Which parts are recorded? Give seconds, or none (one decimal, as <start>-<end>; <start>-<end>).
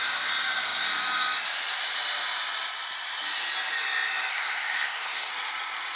0.0-4.3; 5.3-6.0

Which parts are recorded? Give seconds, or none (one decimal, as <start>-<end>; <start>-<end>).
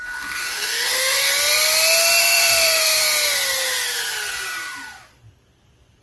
1.3-2.2; 3.0-6.0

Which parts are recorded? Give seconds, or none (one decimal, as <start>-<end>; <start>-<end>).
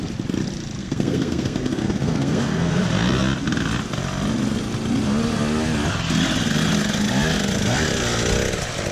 0.0-0.8; 2.8-8.9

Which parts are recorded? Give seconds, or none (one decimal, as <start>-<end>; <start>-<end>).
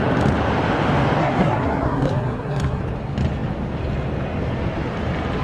0.0-1.2; 2.8-5.4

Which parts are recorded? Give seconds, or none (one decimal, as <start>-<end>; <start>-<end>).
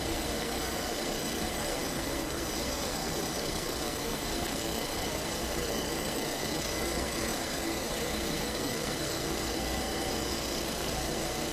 none